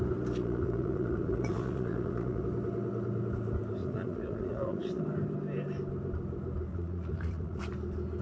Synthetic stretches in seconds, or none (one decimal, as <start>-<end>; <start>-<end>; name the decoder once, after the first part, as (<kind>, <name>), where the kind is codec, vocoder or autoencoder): 0.4-2.4 (vocoder, Vocos); 3.8-5.0; 6.7-7.6